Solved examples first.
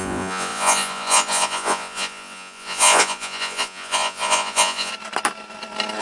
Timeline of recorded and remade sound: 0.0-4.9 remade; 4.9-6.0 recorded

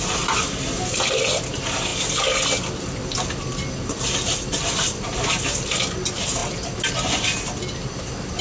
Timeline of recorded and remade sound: 0.0-8.4 recorded

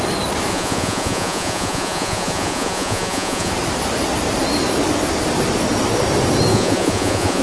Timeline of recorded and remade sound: 0.0-0.5 recorded; 0.5-3.5 remade; 3.5-6.5 recorded; 6.5-7.4 remade

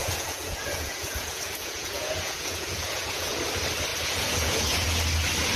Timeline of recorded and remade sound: 0.0-3.4 remade; 3.4-3.9 recorded; 3.9-5.0 remade; 5.0-5.6 recorded